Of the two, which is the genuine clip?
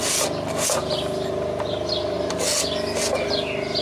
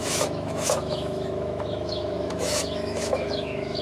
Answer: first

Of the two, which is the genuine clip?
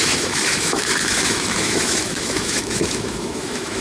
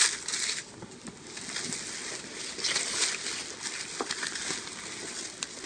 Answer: second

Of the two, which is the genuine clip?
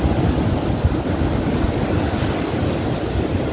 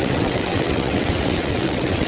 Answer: first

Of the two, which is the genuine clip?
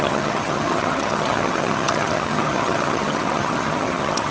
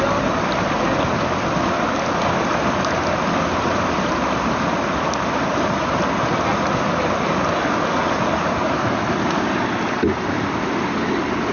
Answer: second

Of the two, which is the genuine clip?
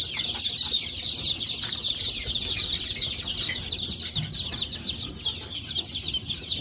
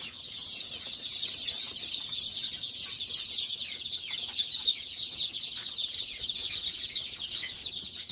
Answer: first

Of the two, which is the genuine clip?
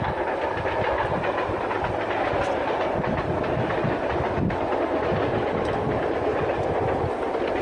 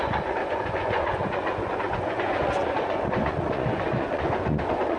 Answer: first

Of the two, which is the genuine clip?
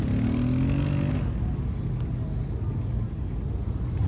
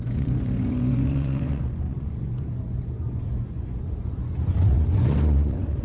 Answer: first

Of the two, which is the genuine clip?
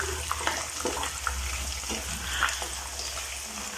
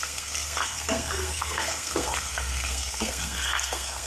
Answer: first